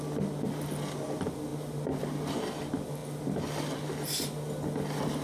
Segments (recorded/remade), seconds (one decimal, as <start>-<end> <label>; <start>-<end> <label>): 0.0-5.2 recorded

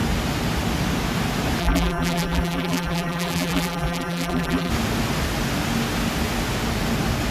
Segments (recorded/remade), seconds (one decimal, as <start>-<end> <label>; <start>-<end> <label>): 0.0-1.6 recorded; 1.6-4.7 remade; 4.7-7.3 recorded

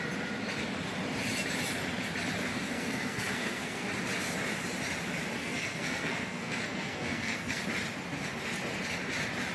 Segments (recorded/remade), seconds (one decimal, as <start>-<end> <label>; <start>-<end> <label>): 0.0-2.5 recorded; 2.5-3.9 remade; 3.9-5.4 recorded; 5.4-7.6 remade; 7.6-9.5 recorded

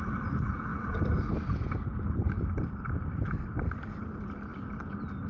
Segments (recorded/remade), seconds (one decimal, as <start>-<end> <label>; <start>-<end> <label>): 0.0-5.3 recorded

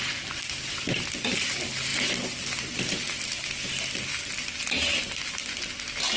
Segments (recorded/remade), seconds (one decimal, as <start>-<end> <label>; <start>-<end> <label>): 0.0-6.2 recorded

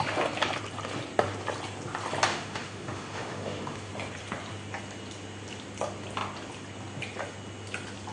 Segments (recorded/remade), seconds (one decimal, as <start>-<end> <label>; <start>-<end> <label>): 0.0-2.3 recorded; 2.3-3.9 remade; 3.9-8.1 recorded

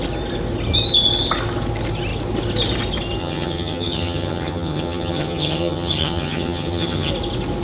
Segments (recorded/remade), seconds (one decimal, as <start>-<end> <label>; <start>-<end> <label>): 0.0-3.2 recorded; 3.2-7.1 remade; 7.1-7.6 recorded

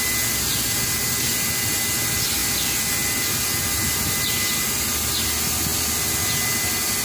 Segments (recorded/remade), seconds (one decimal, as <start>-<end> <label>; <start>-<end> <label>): 0.0-7.0 recorded